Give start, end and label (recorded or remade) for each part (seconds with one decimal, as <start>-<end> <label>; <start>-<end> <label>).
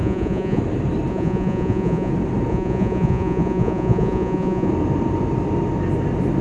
0.0-0.6 remade; 0.6-1.1 recorded; 1.1-2.1 remade; 2.1-2.5 recorded; 2.5-4.7 remade; 4.7-6.4 recorded